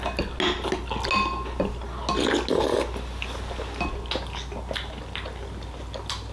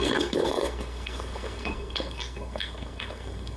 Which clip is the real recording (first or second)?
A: first